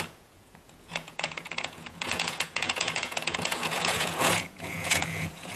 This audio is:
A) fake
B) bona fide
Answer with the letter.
A